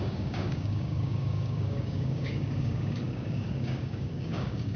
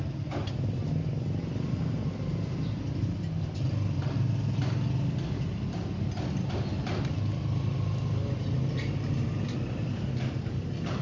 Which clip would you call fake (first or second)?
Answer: first